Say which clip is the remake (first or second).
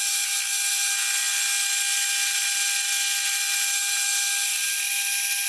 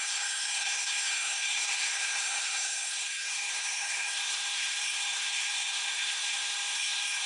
second